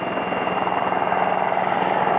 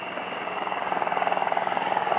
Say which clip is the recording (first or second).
first